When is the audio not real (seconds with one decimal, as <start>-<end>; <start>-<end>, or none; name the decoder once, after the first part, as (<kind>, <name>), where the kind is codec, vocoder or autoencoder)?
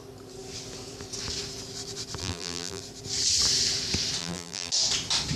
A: 2.2-2.8 (vocoder, BigVGAN v2); 4.2-4.7